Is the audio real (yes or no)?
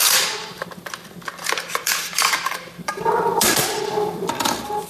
no